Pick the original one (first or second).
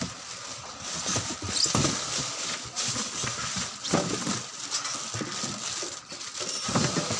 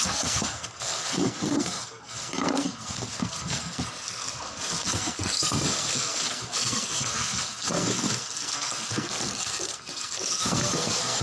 first